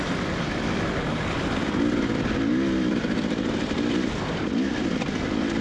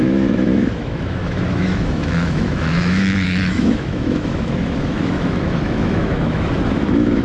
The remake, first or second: second